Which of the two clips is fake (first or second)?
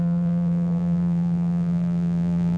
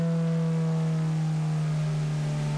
first